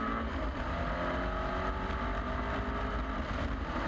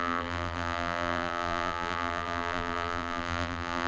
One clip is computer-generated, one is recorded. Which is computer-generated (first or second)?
second